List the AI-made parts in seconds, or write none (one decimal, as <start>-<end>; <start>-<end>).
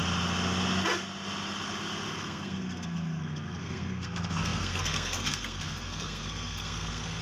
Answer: 2.1-7.2